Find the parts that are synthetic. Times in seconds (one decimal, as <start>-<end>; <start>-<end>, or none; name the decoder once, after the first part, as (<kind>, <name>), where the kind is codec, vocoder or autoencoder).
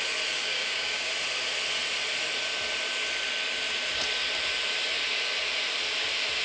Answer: 0.4-1.1 (codec, DAC)